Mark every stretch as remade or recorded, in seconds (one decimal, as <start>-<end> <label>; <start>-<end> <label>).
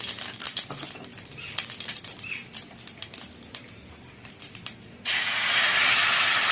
0.0-1.1 recorded; 1.1-4.9 remade; 4.9-5.4 recorded; 5.4-6.0 remade; 6.0-6.5 recorded